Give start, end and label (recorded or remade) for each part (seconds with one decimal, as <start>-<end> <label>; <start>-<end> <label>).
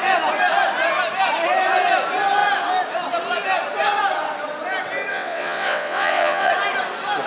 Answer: 0.0-5.1 recorded; 5.1-6.5 remade; 6.5-7.3 recorded